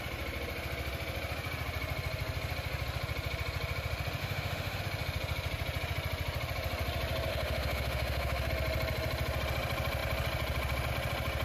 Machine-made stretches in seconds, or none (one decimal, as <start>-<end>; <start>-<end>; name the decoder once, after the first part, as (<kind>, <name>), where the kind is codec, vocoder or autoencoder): 4.2-4.8 (autoencoder, DAC-VAE); 7.3-8.5